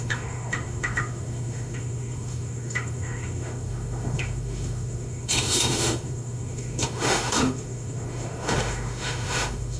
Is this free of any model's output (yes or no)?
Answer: no